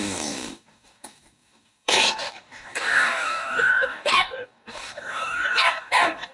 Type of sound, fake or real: fake